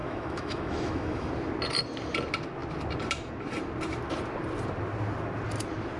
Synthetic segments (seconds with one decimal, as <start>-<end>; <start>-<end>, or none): 0.0-1.3